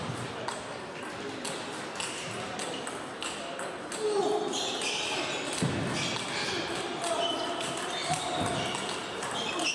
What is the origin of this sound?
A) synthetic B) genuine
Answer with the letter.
B